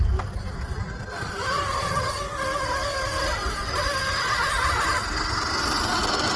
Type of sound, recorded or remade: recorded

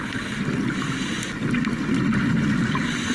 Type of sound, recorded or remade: recorded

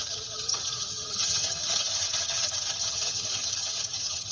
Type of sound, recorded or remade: remade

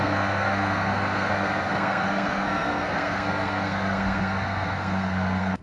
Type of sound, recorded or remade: remade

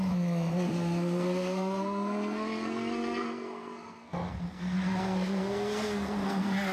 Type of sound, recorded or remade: remade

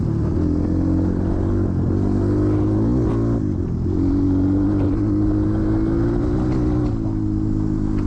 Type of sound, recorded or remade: recorded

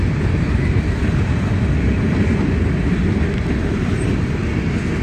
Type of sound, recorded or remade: recorded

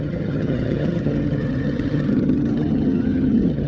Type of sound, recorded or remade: remade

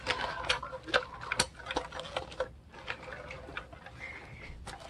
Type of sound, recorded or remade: recorded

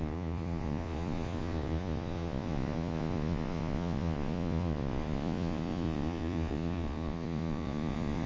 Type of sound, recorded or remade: remade